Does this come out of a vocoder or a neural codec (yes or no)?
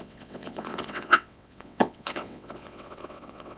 yes